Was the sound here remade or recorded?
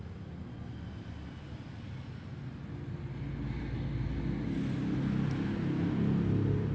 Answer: recorded